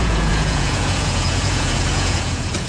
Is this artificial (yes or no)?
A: yes